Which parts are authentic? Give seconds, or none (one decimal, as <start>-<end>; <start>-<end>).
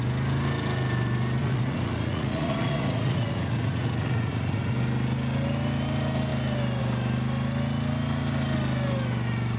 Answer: 0.0-1.4; 4.7-9.6